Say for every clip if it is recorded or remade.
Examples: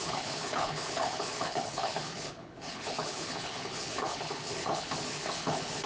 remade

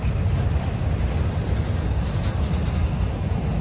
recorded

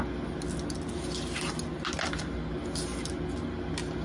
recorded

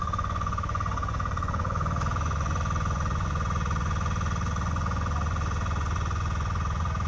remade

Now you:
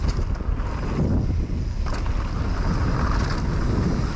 recorded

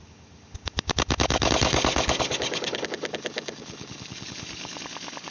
remade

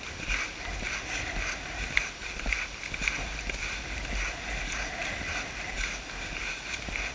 recorded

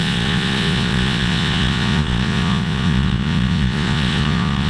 remade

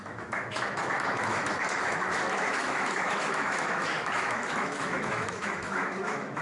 remade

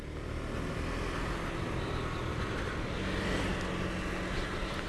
recorded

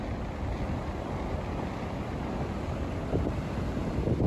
recorded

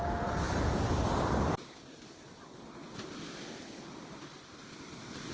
recorded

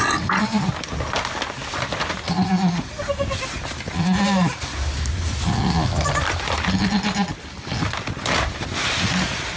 recorded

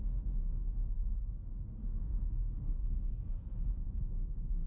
remade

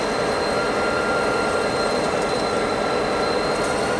recorded